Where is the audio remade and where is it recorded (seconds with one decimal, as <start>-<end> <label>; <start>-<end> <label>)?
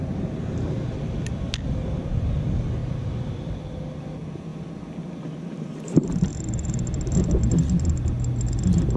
0.0-2.8 recorded; 2.8-4.0 remade; 4.0-9.0 recorded